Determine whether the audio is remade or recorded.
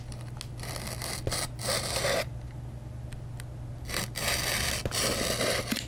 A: recorded